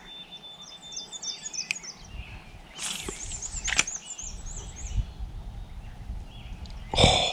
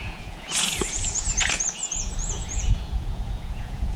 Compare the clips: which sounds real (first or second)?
first